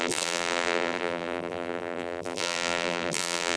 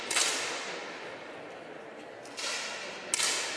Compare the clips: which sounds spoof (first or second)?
first